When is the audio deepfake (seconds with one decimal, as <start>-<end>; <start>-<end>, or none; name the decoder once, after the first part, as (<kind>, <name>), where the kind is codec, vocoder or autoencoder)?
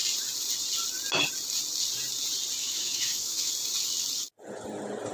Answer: 2.6-3.5 (autoencoder, DAC-VAE)